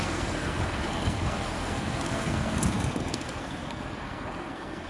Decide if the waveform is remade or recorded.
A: remade